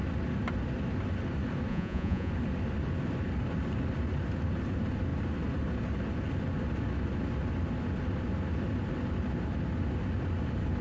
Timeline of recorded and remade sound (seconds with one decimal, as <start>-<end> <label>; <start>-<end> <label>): 0.0-1.7 recorded; 1.7-2.3 remade; 2.3-10.8 recorded